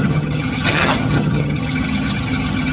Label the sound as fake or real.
fake